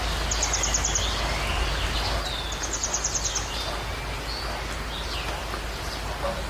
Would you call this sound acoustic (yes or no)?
yes